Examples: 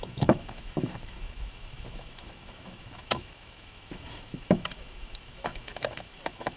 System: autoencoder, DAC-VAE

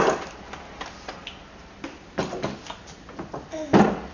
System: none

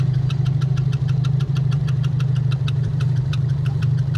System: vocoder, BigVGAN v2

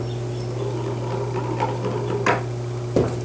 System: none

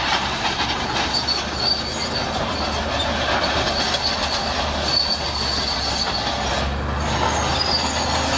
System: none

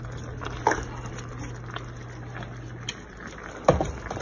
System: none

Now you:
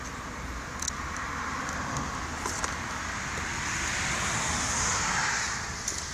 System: none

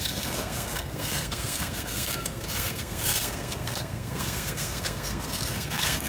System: codec, SNAC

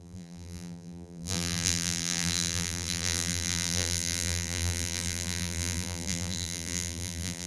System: vocoder, BigVGAN v2